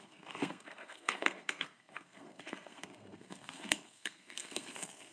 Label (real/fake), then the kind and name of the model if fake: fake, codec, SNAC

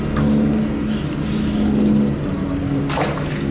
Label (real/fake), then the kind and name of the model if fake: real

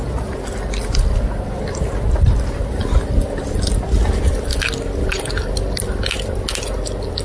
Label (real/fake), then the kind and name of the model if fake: real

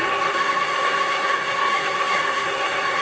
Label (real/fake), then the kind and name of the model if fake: fake, codec, SNAC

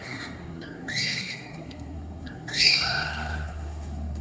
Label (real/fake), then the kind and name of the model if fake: fake, codec, SNAC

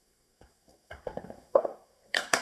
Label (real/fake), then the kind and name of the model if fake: fake, codec, SNAC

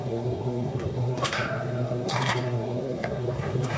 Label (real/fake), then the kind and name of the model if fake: fake, codec, SNAC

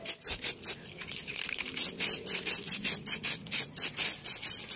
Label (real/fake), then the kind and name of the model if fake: real